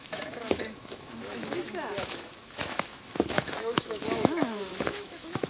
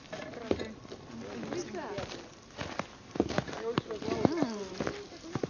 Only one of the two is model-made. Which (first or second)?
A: first